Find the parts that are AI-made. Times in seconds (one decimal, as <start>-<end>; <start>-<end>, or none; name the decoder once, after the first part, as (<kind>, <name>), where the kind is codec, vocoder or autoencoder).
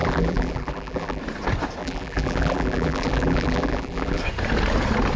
0.0-1.2 (vocoder, BigVGAN v2); 1.8-4.2